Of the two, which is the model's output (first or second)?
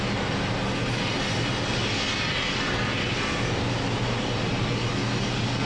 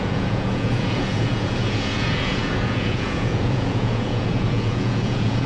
second